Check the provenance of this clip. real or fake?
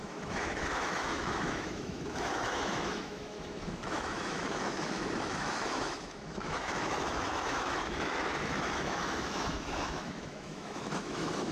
fake